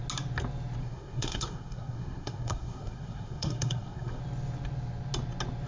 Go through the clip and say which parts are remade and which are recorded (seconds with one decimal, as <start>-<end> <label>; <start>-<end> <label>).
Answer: 0.0-0.8 recorded; 0.8-4.2 remade; 4.2-5.7 recorded